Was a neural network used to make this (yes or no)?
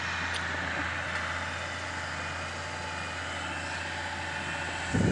no